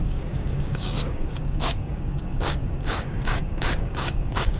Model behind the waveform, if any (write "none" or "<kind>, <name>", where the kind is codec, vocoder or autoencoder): codec, DAC